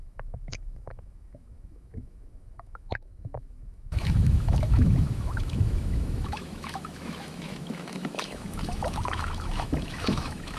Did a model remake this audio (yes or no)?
yes